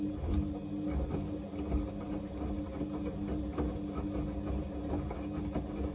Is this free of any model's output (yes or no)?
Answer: yes